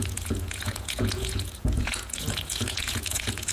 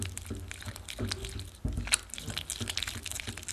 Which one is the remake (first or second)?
first